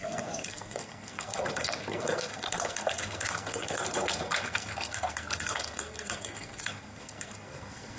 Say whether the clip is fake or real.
fake